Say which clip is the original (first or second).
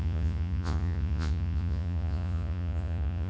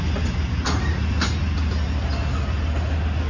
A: second